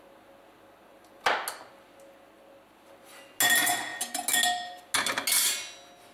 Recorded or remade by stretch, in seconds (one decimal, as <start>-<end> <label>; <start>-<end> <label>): 0.0-6.1 recorded